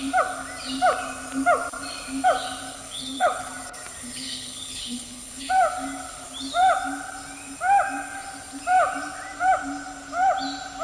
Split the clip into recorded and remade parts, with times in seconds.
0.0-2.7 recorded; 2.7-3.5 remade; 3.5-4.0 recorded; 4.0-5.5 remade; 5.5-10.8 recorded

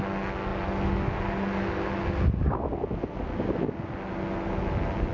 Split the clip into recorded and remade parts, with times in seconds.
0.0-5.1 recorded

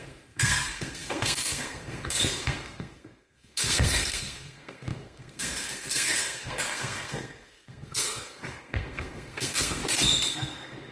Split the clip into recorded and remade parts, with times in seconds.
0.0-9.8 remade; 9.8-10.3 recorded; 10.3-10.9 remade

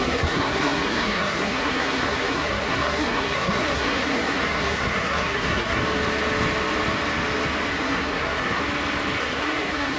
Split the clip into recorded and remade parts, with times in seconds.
0.0-5.8 remade; 5.8-7.7 recorded; 7.7-8.6 remade; 8.6-9.2 recorded; 9.2-10.0 remade

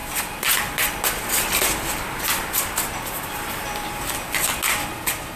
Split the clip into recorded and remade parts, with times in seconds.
0.0-5.4 recorded

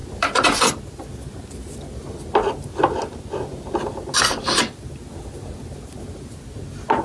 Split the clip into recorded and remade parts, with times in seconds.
0.0-1.1 remade; 1.1-7.0 recorded

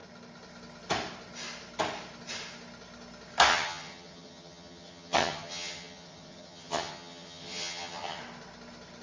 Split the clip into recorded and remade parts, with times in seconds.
0.0-3.5 recorded; 3.5-8.2 remade; 8.2-9.0 recorded

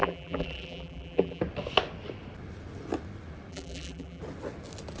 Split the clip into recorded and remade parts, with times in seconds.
0.0-1.4 remade; 1.4-3.5 recorded; 3.5-4.2 remade; 4.2-5.0 recorded